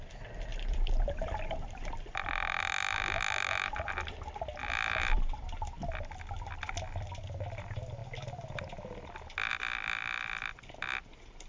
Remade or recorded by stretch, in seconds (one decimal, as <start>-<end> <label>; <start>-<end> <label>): 0.0-0.5 recorded; 0.5-2.6 remade; 2.6-4.6 recorded; 4.6-7.2 remade; 7.2-11.5 recorded